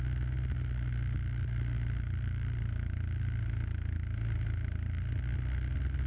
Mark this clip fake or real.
real